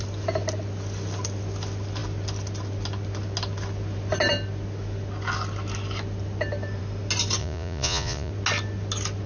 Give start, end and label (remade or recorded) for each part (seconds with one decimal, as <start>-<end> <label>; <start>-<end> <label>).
0.0-7.4 recorded; 7.4-8.3 remade; 8.3-9.3 recorded